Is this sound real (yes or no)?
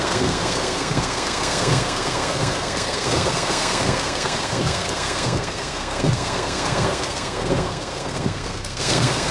no